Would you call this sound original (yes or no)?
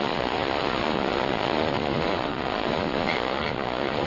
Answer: no